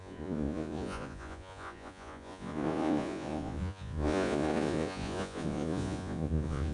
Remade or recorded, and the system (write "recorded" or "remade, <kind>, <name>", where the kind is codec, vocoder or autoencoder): remade, vocoder, Vocos